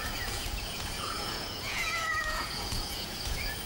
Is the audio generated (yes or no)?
yes